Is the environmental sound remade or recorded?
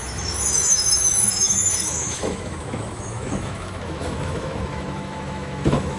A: remade